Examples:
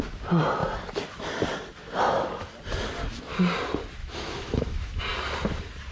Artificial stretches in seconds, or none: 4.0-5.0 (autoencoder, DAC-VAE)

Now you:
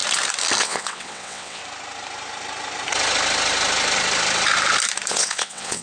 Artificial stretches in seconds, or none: 0.6-1.6 (vocoder, WaveNeXt); 5.1-5.8